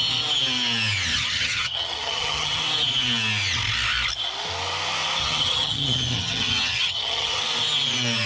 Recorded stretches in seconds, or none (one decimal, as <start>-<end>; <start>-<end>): 0.0-1.1; 2.6-5.2; 7.4-8.3